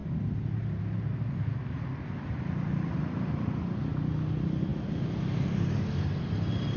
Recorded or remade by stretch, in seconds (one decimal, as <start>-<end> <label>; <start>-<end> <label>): 0.0-6.8 recorded